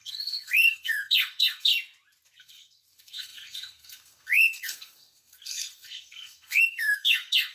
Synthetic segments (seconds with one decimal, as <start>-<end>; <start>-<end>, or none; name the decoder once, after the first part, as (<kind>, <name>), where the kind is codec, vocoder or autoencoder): 0.0-1.7 (codec, SNAC); 2.4-7.5